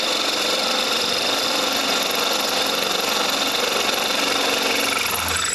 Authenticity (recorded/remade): recorded